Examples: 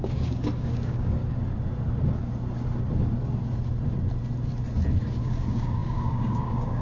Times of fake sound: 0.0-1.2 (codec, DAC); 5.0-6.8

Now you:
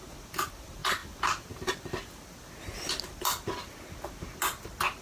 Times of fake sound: none